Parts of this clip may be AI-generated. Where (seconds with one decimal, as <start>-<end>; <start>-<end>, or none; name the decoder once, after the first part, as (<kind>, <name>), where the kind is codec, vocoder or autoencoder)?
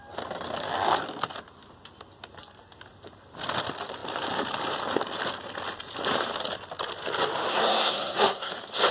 7.5-8.5 (codec, SNAC)